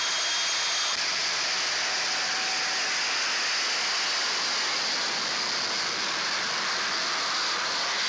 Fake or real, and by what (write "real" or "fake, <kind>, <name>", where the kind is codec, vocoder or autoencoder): real